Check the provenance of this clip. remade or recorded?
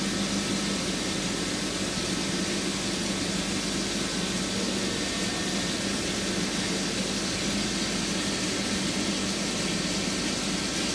recorded